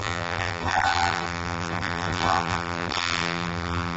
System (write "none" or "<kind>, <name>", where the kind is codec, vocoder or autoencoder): vocoder, BigVGAN v2